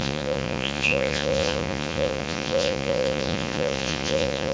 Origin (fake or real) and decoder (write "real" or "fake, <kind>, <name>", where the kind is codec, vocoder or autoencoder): fake, vocoder, Vocos